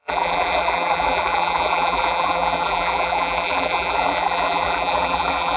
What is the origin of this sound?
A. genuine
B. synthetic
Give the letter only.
B